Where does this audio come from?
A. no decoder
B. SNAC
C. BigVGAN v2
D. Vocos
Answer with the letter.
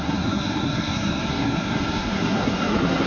B